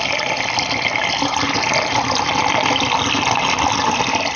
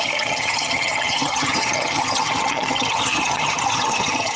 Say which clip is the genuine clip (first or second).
first